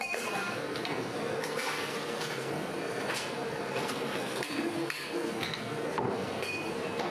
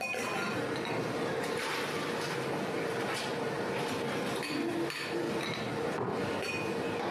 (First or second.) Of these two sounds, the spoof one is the first